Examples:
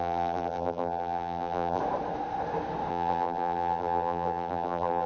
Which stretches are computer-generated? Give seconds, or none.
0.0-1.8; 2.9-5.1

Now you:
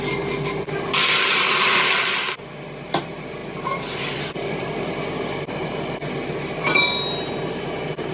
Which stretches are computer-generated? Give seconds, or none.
3.4-4.9

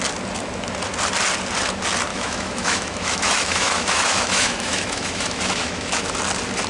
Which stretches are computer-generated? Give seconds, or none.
2.1-6.1

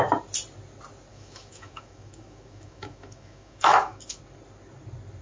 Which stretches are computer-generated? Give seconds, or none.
1.1-4.2

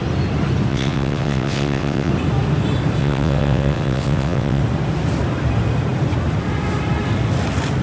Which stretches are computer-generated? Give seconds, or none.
0.7-2.1; 3.0-4.6

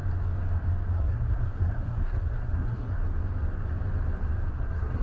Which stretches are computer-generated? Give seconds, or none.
0.9-3.0; 4.5-5.0

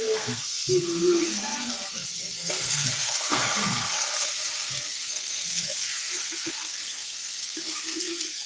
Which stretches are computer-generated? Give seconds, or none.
0.0-8.5